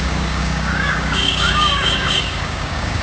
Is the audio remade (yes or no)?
yes